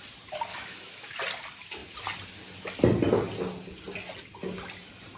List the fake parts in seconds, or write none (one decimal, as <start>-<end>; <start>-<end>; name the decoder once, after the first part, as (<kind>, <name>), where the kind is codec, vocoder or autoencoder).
0.5-1.2 (autoencoder, DAC-VAE)